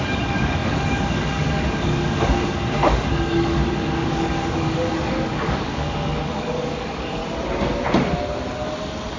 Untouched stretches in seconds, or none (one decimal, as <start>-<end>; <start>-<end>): 7.2-9.2